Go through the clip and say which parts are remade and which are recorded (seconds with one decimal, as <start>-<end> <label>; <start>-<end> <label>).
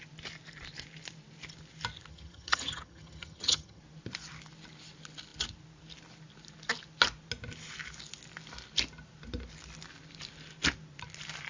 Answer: 0.0-2.1 recorded; 2.1-3.8 remade; 3.8-11.5 recorded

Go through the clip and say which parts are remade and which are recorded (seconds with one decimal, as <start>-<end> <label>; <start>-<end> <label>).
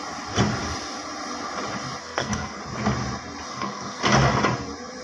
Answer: 0.0-2.0 recorded; 2.0-2.6 remade; 2.6-3.5 recorded; 3.5-4.0 remade; 4.0-5.0 recorded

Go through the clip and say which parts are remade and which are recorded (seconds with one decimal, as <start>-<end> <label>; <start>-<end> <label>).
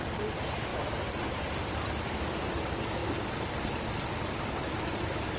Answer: 0.0-5.4 recorded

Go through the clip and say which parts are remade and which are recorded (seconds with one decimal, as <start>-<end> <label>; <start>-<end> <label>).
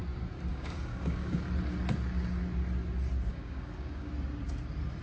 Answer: 0.0-0.5 recorded; 0.5-1.4 remade; 1.4-3.3 recorded; 3.3-4.1 remade; 4.1-5.0 recorded